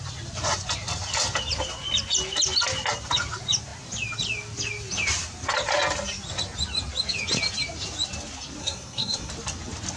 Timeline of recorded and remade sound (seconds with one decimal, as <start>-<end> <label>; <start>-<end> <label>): 0.0-8.6 recorded; 8.6-9.3 remade; 9.3-10.0 recorded